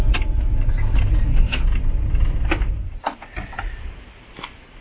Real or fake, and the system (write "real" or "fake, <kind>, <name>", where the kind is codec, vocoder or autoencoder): real